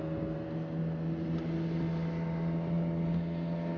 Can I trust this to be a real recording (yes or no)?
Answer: yes